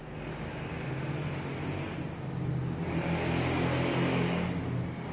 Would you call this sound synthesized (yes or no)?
no